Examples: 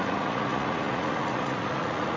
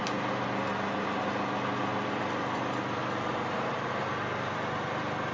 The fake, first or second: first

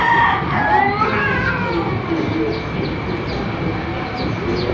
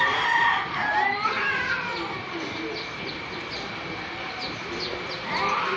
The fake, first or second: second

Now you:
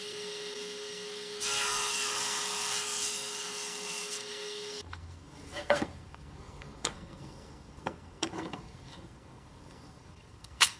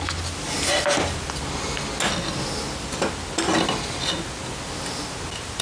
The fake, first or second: first